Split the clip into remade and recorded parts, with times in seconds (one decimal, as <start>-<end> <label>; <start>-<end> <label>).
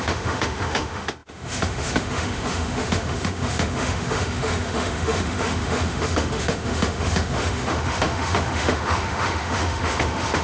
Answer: 0.0-10.4 remade